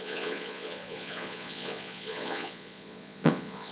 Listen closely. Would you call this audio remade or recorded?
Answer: remade